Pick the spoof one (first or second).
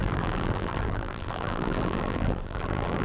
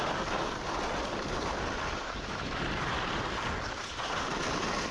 first